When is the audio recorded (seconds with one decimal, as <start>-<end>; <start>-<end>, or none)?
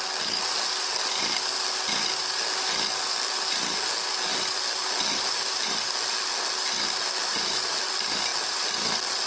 0.0-9.3